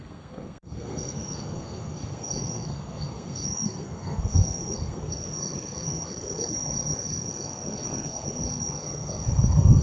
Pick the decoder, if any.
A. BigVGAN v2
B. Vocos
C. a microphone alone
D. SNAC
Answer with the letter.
D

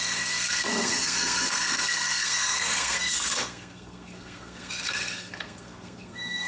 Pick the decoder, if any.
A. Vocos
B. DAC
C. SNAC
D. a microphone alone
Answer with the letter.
C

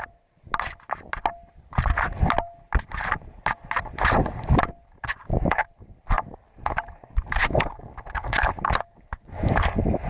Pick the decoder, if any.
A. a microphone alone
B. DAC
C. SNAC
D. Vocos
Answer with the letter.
A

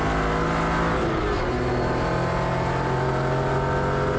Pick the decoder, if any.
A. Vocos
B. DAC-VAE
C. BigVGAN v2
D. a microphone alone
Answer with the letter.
D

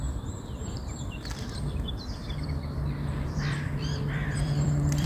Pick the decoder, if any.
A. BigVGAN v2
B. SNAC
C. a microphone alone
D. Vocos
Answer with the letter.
A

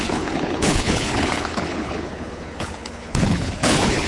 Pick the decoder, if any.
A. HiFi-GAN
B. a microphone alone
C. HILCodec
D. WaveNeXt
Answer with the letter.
C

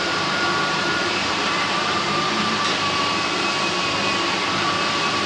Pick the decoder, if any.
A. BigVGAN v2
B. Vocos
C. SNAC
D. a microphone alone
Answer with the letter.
A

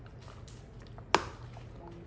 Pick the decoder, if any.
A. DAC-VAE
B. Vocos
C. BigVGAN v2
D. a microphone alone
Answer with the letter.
D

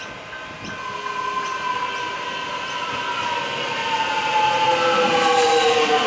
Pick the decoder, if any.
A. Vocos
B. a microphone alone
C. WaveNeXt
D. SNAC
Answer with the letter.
B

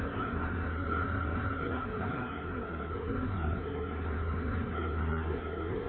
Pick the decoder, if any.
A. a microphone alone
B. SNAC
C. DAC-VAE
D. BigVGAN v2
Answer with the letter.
B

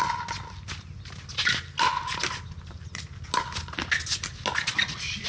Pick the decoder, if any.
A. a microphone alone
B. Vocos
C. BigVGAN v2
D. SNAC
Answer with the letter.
A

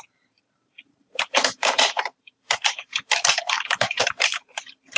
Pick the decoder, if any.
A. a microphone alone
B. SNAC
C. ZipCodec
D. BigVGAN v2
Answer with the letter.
D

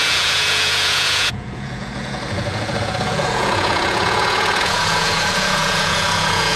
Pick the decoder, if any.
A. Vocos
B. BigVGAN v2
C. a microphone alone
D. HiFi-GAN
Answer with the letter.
A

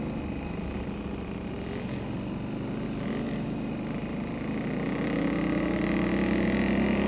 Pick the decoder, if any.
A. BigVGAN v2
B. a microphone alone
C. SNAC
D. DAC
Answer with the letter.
B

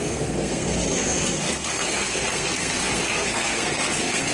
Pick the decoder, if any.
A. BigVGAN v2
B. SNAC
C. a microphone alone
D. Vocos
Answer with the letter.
B